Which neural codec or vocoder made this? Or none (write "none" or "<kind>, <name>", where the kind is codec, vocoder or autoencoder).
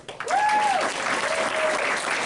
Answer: none